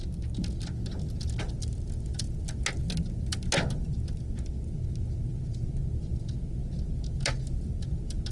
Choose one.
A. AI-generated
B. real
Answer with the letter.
B